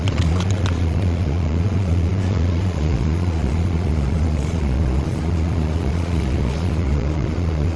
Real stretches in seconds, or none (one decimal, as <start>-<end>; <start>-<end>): none